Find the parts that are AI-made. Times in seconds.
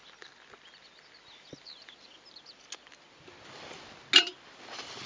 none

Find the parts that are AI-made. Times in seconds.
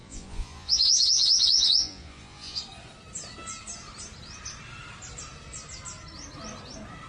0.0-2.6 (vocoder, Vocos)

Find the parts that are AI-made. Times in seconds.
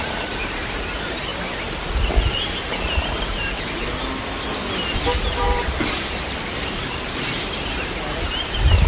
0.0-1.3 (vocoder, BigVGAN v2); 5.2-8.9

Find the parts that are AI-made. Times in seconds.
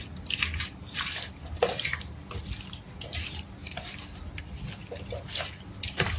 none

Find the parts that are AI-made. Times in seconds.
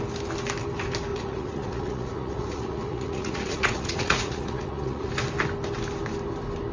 1.1-5.1 (vocoder, Vocos)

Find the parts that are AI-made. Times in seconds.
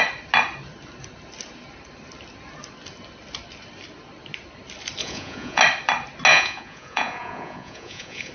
5.0-5.6 (vocoder, Vocos); 6.3-8.3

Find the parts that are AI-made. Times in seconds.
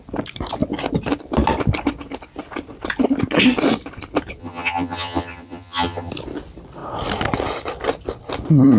4.4-6.1 (vocoder, HiFi-GAN)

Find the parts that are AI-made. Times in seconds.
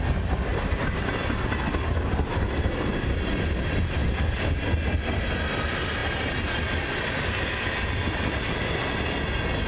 none